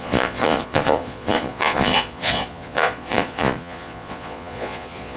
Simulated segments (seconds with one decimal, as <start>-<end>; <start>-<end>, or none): 0.0-5.2